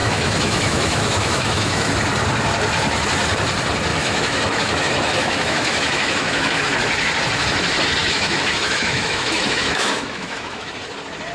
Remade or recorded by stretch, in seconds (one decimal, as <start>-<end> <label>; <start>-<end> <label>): 0.0-1.9 remade; 1.9-3.9 recorded; 3.9-6.6 remade; 6.6-8.0 recorded; 8.0-10.7 remade; 10.7-11.3 recorded